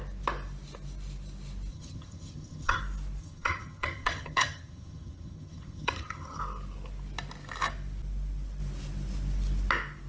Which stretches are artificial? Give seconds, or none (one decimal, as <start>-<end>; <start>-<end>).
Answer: 1.7-2.8; 3.2-6.4